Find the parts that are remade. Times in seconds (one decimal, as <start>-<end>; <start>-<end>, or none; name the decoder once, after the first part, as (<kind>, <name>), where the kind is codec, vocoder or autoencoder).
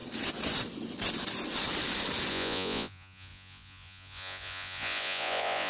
2.3-5.7 (vocoder, Vocos)